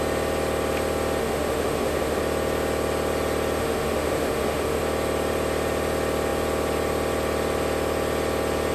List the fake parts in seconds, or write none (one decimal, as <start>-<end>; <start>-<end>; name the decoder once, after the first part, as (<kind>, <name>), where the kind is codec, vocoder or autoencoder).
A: 1.2-2.2 (autoencoder, DAC-VAE); 3.6-4.8

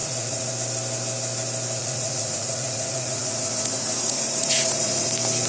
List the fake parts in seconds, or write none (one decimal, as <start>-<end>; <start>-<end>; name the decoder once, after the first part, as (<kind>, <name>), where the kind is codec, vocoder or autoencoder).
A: 0.0-0.5 (vocoder, Vocos); 1.8-5.1

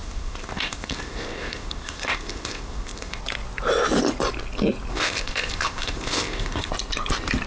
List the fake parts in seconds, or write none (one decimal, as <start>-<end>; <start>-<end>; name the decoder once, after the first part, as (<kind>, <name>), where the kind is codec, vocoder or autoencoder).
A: 0.0-3.2 (codec, ZipCodec); 4.9-6.7

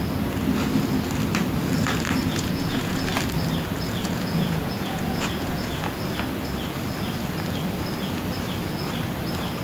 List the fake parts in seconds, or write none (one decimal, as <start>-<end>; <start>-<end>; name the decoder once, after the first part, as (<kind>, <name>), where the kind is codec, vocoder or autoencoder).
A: 2.2-3.1 (vocoder, Vocos); 4.0-5.8